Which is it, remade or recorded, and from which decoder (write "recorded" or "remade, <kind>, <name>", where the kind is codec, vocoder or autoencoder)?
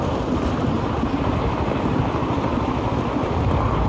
recorded